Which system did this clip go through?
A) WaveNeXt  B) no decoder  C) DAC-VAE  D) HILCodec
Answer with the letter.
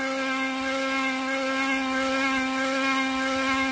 B